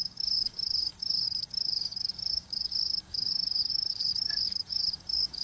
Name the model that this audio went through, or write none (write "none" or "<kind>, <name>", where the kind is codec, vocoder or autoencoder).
codec, DAC